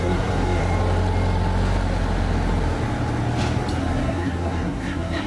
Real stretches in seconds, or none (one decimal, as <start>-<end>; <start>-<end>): 0.6-3.8